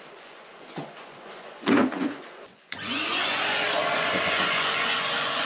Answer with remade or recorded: remade